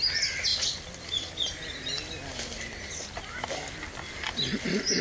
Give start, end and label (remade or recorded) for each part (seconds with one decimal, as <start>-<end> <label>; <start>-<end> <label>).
0.0-5.0 recorded